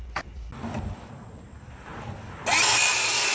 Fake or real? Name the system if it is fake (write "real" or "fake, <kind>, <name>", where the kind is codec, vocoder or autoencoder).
real